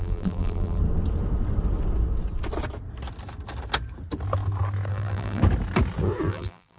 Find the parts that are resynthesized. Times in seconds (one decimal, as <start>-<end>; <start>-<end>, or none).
0.0-0.8; 4.9-5.4; 6.3-6.8